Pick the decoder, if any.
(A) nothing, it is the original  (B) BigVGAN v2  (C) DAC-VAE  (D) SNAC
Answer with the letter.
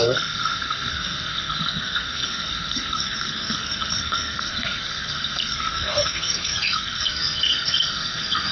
D